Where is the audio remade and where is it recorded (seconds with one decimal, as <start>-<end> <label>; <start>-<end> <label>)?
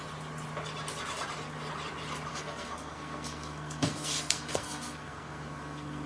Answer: 0.0-2.3 recorded; 2.3-6.1 remade